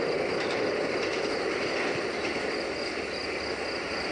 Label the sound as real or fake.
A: real